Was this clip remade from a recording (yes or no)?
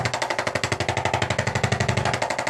no